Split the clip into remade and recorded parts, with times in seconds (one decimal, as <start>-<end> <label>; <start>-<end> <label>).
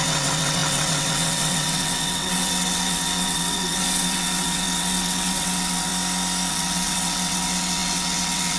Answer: 0.0-5.9 remade; 5.9-6.5 recorded; 6.5-8.6 remade